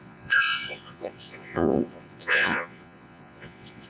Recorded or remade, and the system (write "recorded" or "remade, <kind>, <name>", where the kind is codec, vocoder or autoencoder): remade, vocoder, Vocos